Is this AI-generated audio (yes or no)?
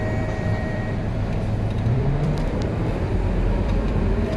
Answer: yes